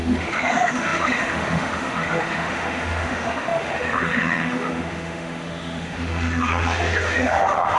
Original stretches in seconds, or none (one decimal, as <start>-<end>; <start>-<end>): none